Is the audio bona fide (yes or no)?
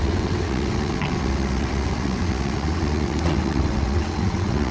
no